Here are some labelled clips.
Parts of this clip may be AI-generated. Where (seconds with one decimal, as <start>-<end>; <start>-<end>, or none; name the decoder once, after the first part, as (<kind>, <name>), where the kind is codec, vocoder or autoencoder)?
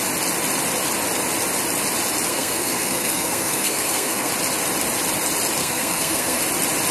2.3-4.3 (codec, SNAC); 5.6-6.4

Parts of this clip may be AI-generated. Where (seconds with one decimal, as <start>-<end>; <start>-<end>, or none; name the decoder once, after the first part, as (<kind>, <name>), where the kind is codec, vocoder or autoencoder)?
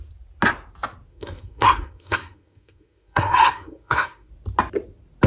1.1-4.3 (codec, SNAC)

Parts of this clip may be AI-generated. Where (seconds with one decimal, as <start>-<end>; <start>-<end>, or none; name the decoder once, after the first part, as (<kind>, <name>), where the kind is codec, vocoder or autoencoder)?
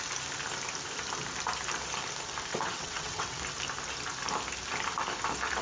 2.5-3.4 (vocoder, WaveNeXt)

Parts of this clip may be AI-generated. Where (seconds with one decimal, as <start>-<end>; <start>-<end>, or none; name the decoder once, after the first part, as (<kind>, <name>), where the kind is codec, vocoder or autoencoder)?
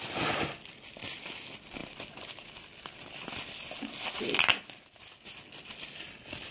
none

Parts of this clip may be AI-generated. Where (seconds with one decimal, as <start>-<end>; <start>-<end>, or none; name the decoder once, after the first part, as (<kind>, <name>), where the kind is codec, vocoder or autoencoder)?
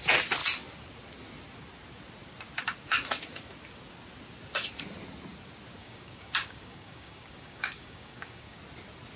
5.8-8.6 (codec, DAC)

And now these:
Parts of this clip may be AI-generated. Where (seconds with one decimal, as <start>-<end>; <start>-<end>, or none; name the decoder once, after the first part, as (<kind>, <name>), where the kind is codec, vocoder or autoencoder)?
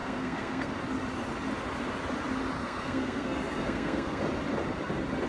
0.0-0.7 (codec, SNAC); 2.6-4.2